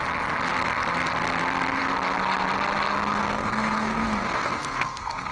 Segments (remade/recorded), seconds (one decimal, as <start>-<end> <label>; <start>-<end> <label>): 0.0-3.2 recorded; 3.2-5.3 remade